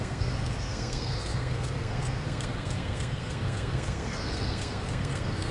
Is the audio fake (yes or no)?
yes